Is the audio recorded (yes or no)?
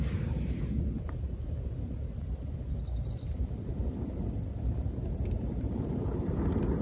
yes